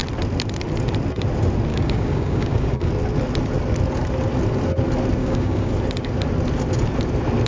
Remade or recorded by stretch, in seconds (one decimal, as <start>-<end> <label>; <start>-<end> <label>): 0.0-1.7 recorded; 1.7-2.9 remade; 2.9-5.2 recorded; 5.2-5.7 remade; 5.7-7.5 recorded